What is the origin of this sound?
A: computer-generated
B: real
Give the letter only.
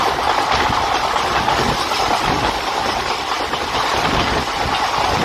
B